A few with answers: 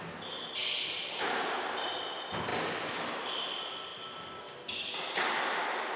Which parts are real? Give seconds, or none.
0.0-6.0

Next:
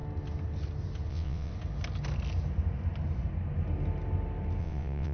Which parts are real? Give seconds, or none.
0.0-1.1; 1.5-4.6

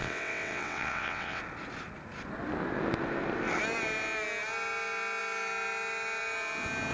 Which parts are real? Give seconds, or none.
1.4-6.9

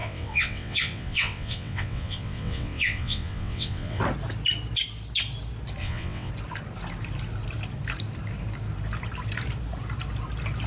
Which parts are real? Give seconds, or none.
4.0-5.8; 6.3-10.7

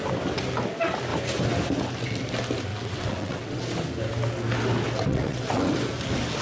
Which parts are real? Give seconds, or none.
0.0-2.7; 3.6-5.1; 5.7-6.4

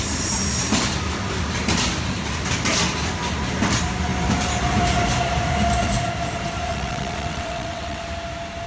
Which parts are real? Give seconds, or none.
0.0-6.7; 8.0-8.7

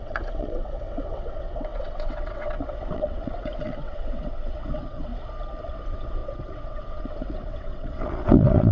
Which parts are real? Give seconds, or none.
5.1-5.6

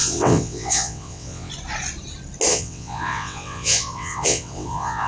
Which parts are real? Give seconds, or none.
1.5-2.5